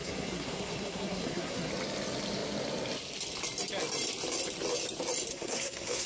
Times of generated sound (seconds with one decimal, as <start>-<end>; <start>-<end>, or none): 0.0-1.7; 5.3-6.1